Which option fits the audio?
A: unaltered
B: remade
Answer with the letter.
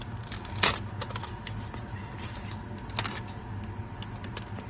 A